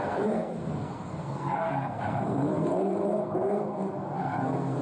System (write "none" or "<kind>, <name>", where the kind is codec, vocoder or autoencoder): codec, SNAC